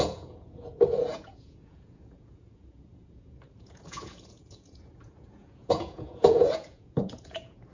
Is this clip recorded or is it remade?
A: remade